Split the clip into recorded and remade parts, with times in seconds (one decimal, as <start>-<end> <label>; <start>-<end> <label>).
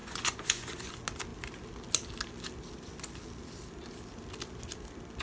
0.0-0.9 remade; 0.9-5.2 recorded